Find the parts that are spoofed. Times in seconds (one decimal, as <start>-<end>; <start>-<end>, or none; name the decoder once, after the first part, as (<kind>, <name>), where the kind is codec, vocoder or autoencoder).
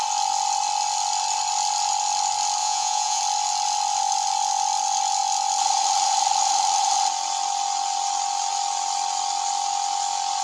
2.6-3.2 (vocoder, Vocos)